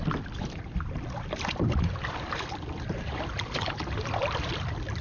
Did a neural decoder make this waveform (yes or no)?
yes